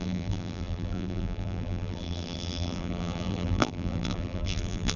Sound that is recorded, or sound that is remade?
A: remade